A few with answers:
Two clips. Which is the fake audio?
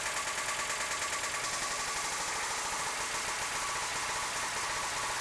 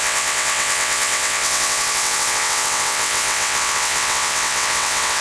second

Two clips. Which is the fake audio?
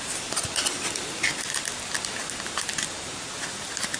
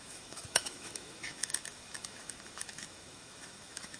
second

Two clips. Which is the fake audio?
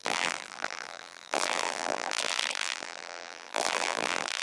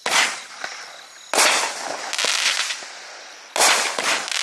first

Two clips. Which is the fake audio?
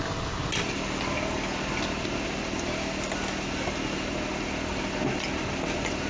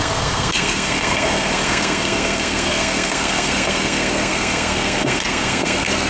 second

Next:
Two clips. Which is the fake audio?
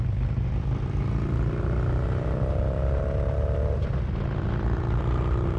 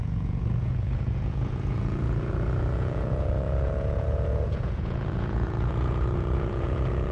second